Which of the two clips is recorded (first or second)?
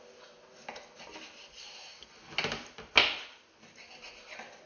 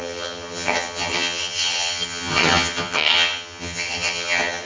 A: first